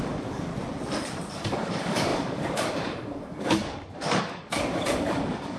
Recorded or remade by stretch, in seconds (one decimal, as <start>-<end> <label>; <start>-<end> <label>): 0.0-0.5 remade; 0.5-1.3 recorded; 1.3-5.6 remade